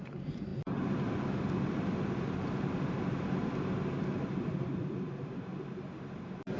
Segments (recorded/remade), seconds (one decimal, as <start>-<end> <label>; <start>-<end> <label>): 0.0-6.6 recorded